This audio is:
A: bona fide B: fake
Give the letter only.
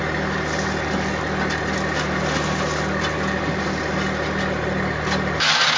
A